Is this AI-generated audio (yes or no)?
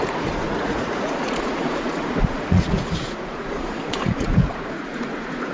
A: yes